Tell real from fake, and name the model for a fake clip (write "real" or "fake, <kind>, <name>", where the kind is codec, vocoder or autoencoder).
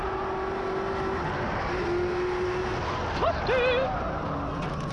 real